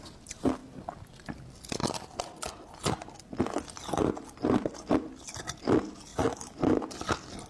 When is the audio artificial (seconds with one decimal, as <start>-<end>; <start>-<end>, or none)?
6.1-7.1